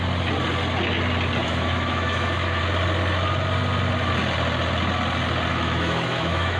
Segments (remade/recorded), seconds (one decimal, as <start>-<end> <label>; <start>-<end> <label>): 0.0-1.4 recorded; 1.4-2.6 remade; 2.6-5.5 recorded; 5.5-6.6 remade